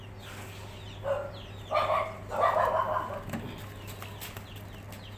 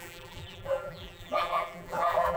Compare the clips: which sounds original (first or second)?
first